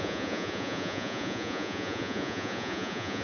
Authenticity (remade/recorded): remade